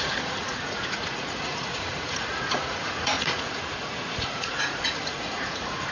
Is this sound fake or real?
fake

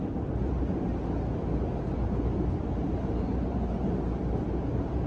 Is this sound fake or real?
real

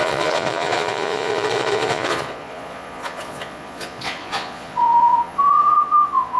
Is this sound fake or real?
fake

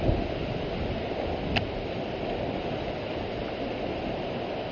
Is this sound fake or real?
real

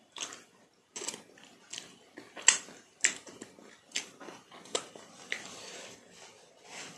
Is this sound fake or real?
real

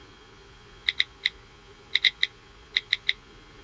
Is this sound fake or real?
fake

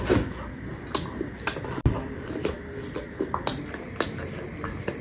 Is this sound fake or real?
real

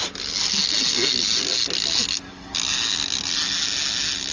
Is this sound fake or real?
real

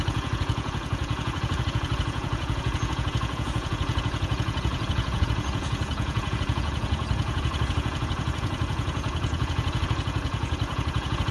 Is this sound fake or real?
fake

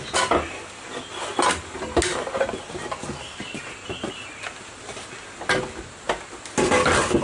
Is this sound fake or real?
real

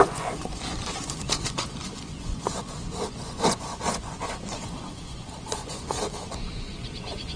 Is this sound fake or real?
fake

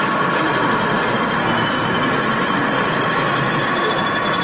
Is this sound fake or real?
real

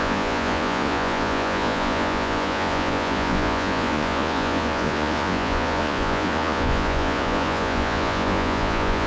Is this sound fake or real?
fake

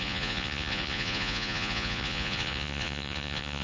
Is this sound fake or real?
fake